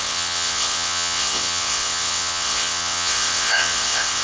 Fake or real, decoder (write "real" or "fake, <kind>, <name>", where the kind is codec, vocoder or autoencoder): fake, vocoder, WaveNeXt